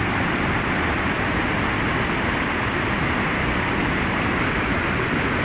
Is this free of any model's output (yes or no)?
yes